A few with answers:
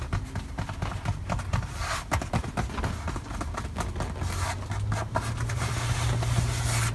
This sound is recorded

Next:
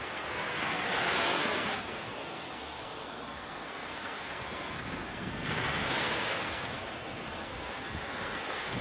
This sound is remade